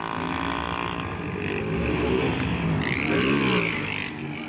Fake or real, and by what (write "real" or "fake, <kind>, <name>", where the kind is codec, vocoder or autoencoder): real